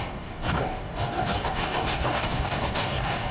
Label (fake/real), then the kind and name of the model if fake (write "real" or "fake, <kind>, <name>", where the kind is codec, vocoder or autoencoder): fake, codec, DAC